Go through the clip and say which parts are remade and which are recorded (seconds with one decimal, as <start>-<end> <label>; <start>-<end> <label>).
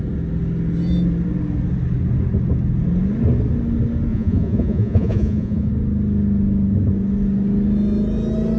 0.0-4.1 recorded; 4.1-5.7 remade; 5.7-8.6 recorded